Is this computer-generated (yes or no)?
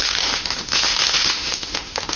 yes